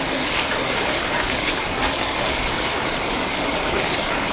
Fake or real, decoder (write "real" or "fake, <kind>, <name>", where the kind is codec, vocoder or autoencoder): fake, codec, DAC